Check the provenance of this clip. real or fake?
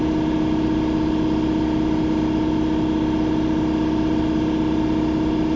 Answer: real